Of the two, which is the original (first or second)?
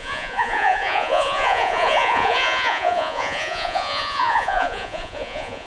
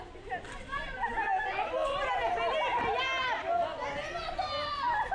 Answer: second